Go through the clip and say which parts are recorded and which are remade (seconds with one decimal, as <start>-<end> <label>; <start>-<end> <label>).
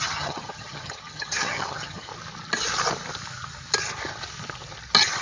0.0-2.1 remade; 2.1-5.2 recorded